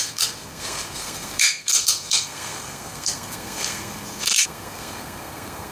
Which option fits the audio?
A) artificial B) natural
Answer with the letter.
A